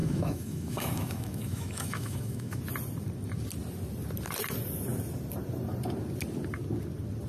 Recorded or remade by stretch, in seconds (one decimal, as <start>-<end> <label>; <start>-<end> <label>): 0.0-2.6 remade; 2.6-7.3 recorded